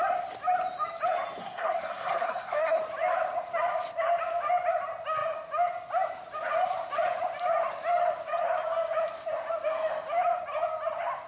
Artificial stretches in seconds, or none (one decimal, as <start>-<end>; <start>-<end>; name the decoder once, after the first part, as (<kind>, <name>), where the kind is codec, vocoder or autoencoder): 1.4-2.8 (codec, SNAC)